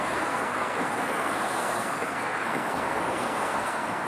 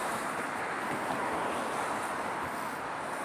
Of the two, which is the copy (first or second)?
first